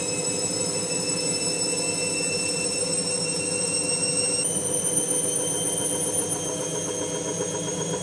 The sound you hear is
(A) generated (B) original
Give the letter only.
B